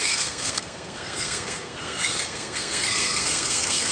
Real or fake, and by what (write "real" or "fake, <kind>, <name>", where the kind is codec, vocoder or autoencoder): fake, codec, SNAC